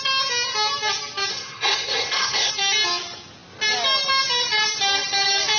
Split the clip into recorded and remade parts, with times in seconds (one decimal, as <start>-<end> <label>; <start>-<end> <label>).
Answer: 0.0-1.3 recorded; 1.3-2.5 remade; 2.5-5.6 recorded